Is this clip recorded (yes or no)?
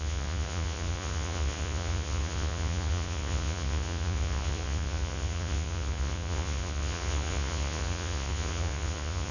no